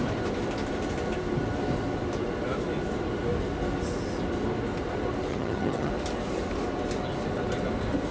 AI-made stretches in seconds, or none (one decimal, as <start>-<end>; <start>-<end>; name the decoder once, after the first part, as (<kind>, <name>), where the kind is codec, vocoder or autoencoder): 5.3-5.9 (vocoder, HiFi-GAN)